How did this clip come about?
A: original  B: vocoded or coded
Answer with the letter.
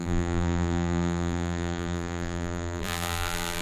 B